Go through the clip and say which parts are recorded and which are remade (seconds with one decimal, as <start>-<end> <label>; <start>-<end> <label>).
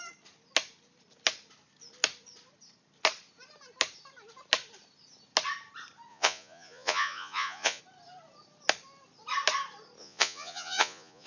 0.0-6.1 recorded; 6.1-7.8 remade; 7.8-10.0 recorded; 10.0-11.3 remade